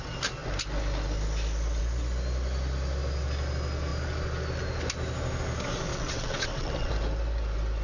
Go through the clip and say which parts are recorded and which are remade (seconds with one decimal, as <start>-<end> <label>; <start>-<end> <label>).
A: 0.0-5.9 recorded; 5.9-6.9 remade; 6.9-7.8 recorded